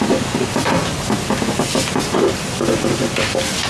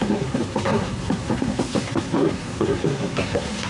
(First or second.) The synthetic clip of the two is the second